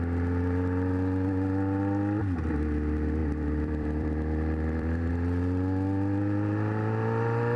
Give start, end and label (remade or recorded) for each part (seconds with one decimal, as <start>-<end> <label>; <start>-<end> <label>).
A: 0.0-3.2 recorded; 3.2-5.1 remade; 5.1-7.6 recorded